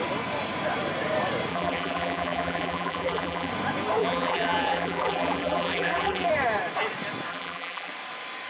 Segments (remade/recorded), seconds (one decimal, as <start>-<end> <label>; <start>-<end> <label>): 0.0-1.5 recorded; 1.5-3.5 remade; 3.5-4.0 recorded; 4.0-6.3 remade; 6.3-7.3 recorded; 7.3-7.9 remade; 7.9-8.5 recorded

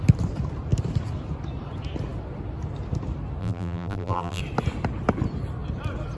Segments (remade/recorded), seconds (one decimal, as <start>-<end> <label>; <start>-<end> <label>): 0.0-3.4 recorded; 3.4-4.4 remade; 4.4-6.2 recorded

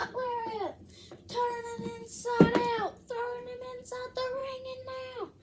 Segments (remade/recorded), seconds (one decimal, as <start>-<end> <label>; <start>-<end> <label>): 0.0-1.6 remade; 1.6-4.4 recorded; 4.4-5.4 remade

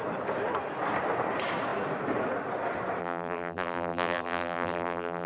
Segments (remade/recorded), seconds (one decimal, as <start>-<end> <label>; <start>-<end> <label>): 0.0-3.0 recorded; 3.0-5.3 remade

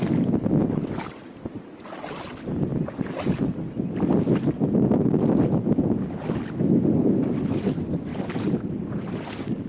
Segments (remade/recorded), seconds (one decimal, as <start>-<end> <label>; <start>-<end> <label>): 0.0-8.1 recorded; 8.1-9.0 remade; 9.0-9.7 recorded